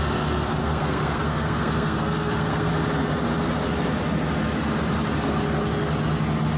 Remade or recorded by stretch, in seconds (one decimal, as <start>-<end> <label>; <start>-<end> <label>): 0.0-0.6 recorded; 0.6-2.7 remade; 2.7-6.6 recorded

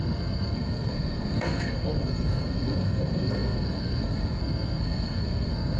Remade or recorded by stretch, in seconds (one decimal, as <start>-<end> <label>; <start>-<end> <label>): 0.0-5.8 remade

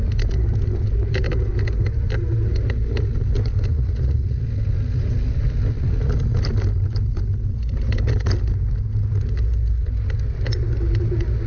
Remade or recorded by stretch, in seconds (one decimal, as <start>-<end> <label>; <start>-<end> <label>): 0.0-3.7 recorded; 3.7-4.4 remade; 4.4-11.5 recorded

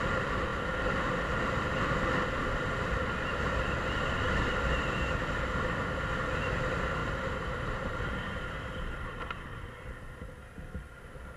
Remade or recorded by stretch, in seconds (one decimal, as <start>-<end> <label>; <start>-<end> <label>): 0.0-7.0 recorded; 7.0-11.0 remade; 11.0-11.4 recorded